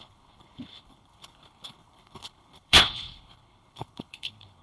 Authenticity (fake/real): fake